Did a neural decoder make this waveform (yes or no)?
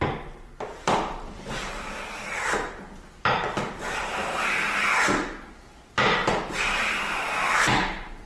yes